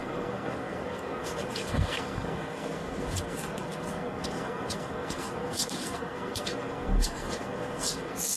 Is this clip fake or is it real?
fake